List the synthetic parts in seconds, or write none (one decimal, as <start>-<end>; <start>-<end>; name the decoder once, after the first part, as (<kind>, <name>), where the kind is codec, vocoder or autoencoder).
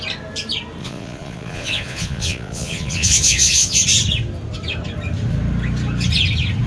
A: 0.8-3.8 (vocoder, Vocos)